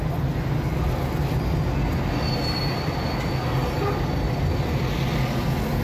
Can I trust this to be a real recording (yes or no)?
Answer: yes